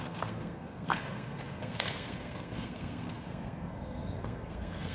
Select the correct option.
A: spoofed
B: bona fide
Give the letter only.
A